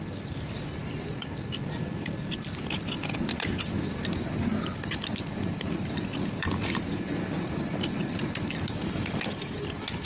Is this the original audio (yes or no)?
yes